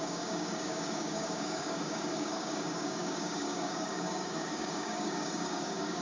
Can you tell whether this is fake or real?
fake